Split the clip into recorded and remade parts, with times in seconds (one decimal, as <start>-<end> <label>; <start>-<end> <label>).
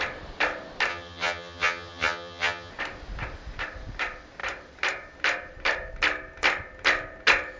0.0-0.9 recorded; 0.9-2.7 remade; 2.7-7.6 recorded